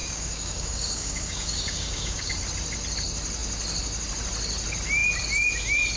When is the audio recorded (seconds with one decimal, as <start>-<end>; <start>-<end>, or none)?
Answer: 2.3-6.0